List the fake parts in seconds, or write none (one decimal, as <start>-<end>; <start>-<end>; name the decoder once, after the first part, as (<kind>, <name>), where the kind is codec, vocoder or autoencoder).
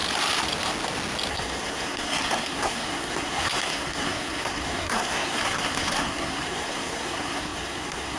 1.3-8.2 (codec, SNAC)